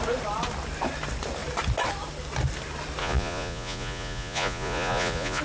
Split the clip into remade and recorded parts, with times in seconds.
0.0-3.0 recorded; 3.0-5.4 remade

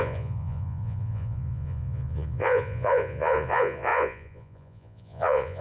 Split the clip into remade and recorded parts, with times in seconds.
0.0-5.6 remade

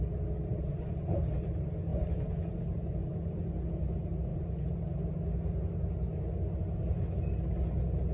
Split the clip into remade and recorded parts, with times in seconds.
0.0-8.1 recorded

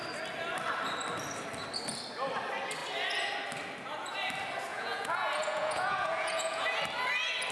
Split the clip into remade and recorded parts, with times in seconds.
0.0-4.7 recorded; 4.7-6.8 remade; 6.8-7.5 recorded

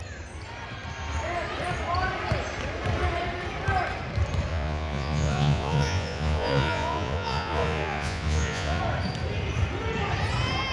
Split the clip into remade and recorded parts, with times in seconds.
0.0-4.5 recorded; 4.5-8.8 remade; 8.8-10.7 recorded

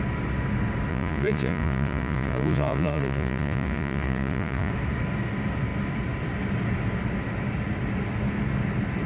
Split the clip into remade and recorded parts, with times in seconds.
0.0-0.9 recorded; 0.9-4.7 remade; 4.7-9.1 recorded